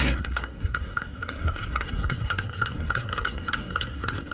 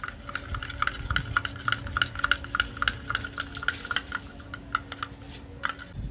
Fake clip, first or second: first